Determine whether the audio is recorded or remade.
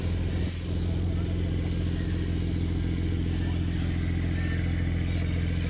recorded